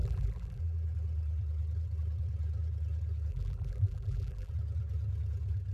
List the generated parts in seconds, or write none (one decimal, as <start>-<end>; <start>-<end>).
0.0-0.6; 3.3-4.5